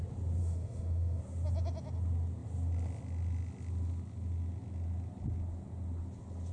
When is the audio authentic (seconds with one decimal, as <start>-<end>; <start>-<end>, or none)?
0.0-0.4; 1.2-6.5